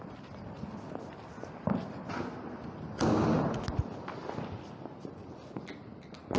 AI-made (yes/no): no